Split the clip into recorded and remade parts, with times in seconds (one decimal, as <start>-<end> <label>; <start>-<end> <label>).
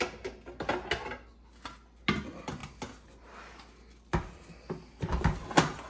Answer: 0.0-5.9 recorded